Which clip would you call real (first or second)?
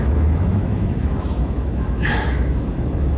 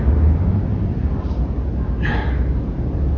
second